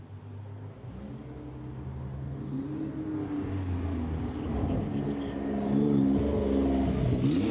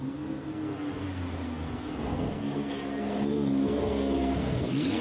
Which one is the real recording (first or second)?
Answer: first